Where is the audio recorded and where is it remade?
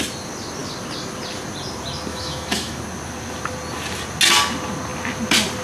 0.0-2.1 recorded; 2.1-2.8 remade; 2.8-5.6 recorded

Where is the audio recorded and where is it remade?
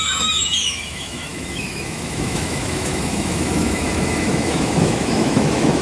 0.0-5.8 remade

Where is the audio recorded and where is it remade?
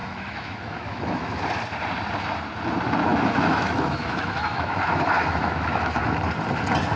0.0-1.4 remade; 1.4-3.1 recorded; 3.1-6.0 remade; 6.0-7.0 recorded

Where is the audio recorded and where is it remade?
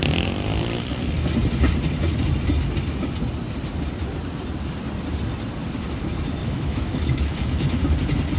0.0-6.4 recorded; 6.4-7.8 remade; 7.8-8.4 recorded